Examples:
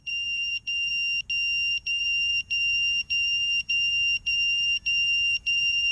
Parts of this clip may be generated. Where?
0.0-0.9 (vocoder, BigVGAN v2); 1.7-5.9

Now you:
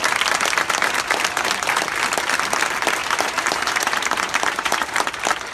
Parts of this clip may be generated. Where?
3.0-5.1 (vocoder, BigVGAN v2)

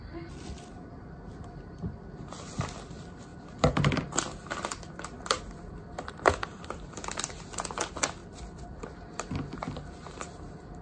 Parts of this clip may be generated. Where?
3.3-7.1 (vocoder, BigVGAN v2); 8.2-8.9

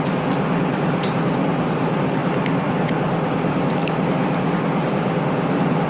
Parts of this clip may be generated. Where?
0.0-5.9 (vocoder, BigVGAN v2)

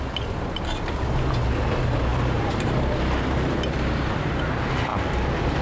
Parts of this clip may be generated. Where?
2.1-4.3 (vocoder, BigVGAN v2); 4.9-5.6

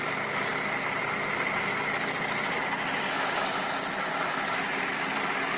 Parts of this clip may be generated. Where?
none

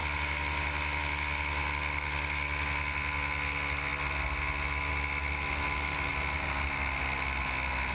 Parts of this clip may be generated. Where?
none

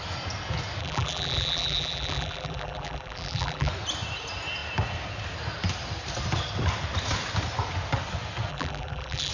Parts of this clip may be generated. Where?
0.8-3.7 (vocoder, BigVGAN v2); 8.5-9.3